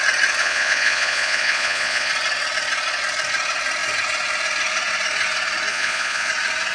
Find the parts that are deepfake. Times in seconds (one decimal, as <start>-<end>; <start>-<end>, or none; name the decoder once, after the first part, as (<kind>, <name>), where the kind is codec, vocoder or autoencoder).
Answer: 0.4-2.1 (vocoder, Vocos); 5.7-6.3